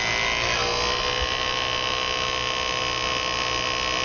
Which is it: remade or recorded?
recorded